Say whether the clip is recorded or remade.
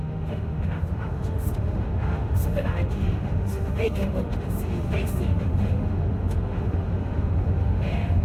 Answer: remade